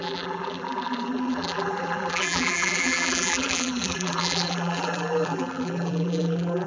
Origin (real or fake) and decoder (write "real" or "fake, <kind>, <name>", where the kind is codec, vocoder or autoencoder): fake, vocoder, BigVGAN v2